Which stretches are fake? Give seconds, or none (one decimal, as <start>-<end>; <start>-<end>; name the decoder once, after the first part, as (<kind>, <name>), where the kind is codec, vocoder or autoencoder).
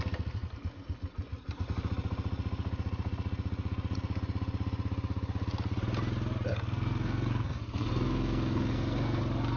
6.5-9.2 (codec, SNAC)